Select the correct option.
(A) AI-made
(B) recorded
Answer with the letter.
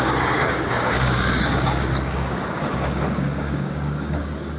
A